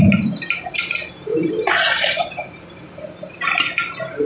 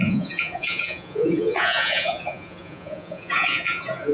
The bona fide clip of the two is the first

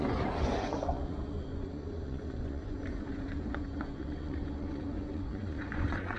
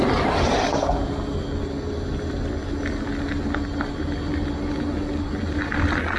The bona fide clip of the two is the second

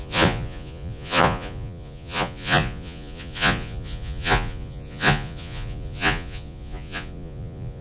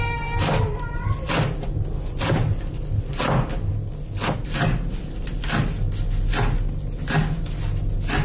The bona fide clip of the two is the second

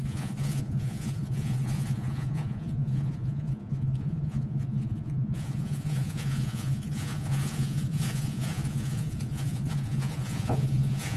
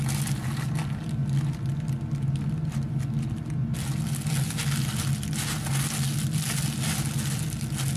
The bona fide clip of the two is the second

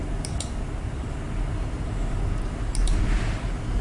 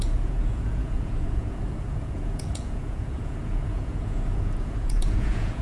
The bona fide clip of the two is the first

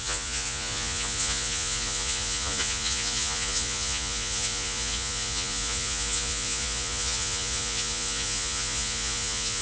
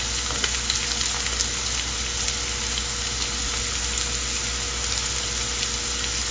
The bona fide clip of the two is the second